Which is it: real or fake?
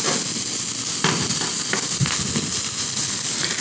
real